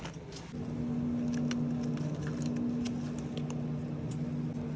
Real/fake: real